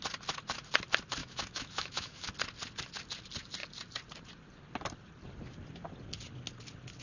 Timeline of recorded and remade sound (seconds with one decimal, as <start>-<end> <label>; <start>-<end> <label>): 0.0-1.2 recorded; 1.2-2.3 remade; 2.3-7.0 recorded